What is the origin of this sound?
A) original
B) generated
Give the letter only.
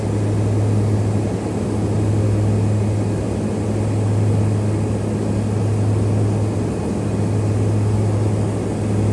A